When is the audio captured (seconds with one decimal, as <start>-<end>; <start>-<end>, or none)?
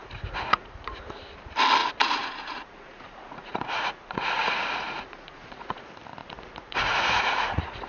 1.2-1.8; 5.8-6.2